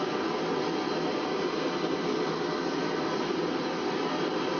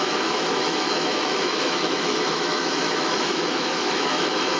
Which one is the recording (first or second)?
first